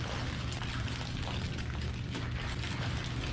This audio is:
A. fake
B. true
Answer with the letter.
B